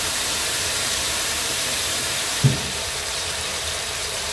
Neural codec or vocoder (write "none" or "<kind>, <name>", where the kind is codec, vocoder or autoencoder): vocoder, BigVGAN v2